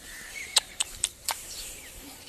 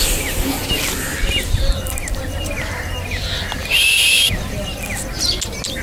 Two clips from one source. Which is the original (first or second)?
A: second